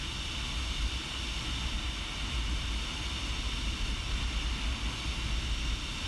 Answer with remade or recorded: recorded